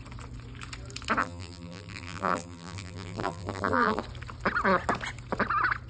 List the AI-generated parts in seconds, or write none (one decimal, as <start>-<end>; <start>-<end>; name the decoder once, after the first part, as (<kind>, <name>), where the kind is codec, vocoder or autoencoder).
1.2-4.0 (vocoder, BigVGAN v2)

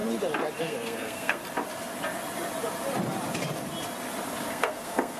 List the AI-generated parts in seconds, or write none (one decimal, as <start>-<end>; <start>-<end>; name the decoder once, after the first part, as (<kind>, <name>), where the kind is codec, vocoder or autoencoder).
0.6-1.4 (codec, SNAC); 4.5-5.2